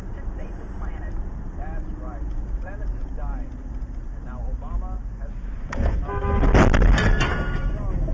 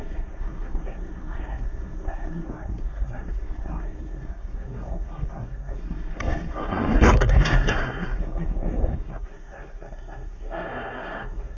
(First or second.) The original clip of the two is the first